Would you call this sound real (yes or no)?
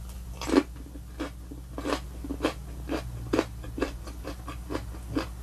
yes